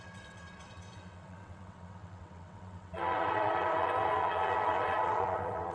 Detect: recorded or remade remade